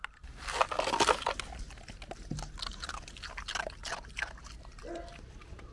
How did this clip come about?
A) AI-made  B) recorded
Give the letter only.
B